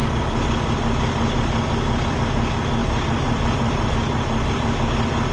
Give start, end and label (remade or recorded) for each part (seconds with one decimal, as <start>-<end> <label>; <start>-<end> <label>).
0.0-2.8 recorded; 2.8-4.5 remade; 4.5-5.3 recorded